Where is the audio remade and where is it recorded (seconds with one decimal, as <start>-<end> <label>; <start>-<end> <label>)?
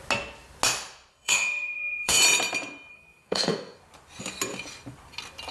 0.0-1.1 recorded; 1.1-2.2 remade; 2.2-2.9 recorded; 2.9-3.8 remade; 3.8-5.5 recorded